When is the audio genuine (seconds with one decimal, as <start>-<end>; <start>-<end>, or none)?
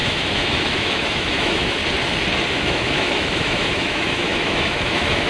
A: 1.8-2.5